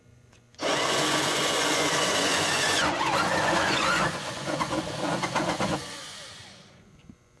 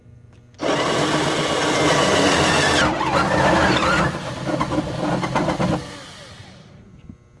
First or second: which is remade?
first